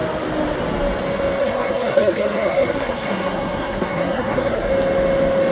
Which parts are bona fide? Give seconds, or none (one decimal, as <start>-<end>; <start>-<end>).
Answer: 0.0-1.4; 4.7-5.5